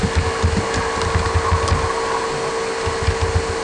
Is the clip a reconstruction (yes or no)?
no